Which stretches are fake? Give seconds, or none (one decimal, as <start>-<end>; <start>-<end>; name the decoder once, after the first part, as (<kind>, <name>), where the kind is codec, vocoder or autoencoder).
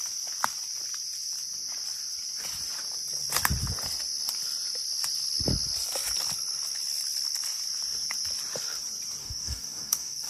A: 9.2-10.3 (codec, DAC)